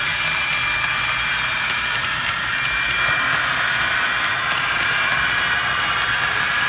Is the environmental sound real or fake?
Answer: real